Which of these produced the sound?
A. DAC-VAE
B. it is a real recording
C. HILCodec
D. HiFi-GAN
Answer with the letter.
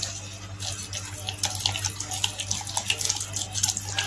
B